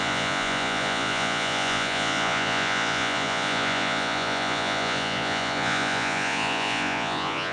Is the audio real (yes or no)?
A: no